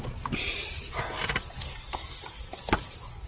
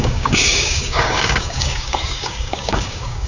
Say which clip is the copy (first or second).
second